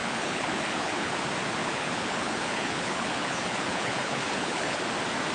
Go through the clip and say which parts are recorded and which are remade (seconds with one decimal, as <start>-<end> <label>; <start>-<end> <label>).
0.0-1.1 remade; 1.1-1.6 recorded; 1.6-4.8 remade; 4.8-5.3 recorded